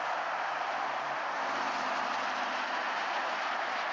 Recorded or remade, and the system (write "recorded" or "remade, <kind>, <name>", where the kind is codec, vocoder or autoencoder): recorded